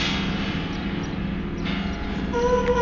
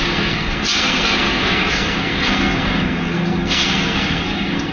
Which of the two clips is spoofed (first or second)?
second